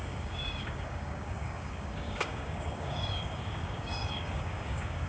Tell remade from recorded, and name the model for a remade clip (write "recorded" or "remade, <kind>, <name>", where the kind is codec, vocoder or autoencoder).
remade, codec, DAC